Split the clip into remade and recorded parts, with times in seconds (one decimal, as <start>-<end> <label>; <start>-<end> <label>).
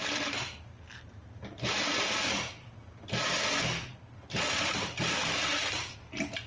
0.0-6.5 recorded